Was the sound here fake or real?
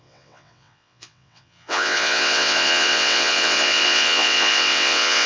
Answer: fake